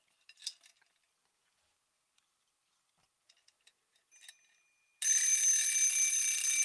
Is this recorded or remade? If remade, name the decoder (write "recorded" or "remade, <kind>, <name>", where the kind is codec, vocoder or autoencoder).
recorded